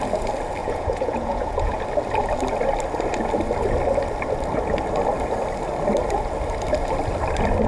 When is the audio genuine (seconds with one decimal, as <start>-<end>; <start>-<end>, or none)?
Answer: 0.0-0.6; 1.8-7.7

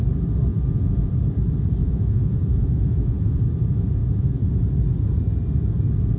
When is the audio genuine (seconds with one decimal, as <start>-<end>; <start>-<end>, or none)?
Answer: 0.0-0.5; 1.1-1.8; 3.4-4.0; 4.5-6.2

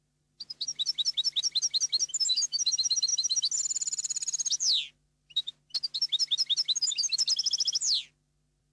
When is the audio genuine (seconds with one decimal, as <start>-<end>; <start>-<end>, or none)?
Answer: 0.0-8.7

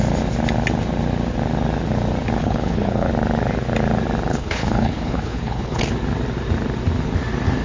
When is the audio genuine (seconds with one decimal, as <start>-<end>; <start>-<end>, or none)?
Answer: 0.0-2.4; 3.1-4.3; 5.8-7.6